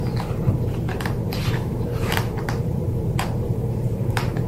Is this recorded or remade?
remade